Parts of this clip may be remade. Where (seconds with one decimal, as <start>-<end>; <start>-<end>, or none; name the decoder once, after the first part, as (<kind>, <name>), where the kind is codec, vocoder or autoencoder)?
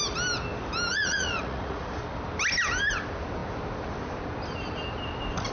0.9-2.0 (vocoder, Vocos)